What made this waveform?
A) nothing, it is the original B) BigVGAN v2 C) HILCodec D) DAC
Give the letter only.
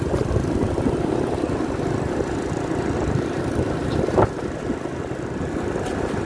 A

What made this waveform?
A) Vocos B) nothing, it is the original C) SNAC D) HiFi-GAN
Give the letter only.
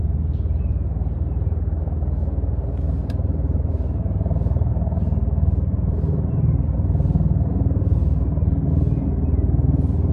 B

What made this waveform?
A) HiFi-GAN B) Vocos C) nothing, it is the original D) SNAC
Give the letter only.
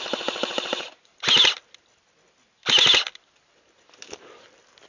C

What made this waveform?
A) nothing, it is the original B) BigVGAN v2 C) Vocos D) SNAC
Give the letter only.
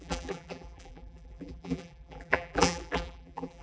B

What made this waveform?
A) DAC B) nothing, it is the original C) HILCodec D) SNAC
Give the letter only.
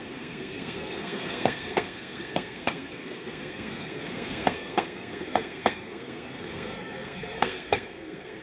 D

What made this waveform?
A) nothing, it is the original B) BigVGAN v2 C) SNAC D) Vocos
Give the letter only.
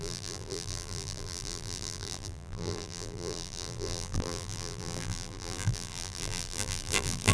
B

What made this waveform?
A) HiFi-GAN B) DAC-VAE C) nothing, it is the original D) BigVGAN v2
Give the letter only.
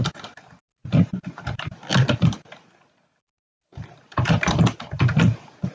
C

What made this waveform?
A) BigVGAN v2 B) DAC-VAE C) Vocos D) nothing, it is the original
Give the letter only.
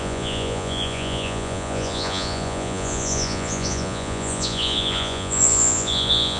C